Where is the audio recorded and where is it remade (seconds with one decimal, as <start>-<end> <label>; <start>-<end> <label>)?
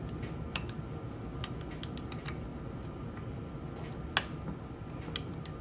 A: 0.0-2.5 recorded; 2.5-3.5 remade; 3.5-5.6 recorded